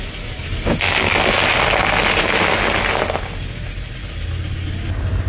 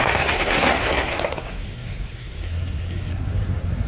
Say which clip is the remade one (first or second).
second